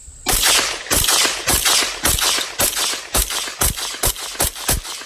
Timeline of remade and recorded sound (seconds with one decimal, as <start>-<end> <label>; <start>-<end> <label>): 0.0-0.5 remade; 0.5-5.1 recorded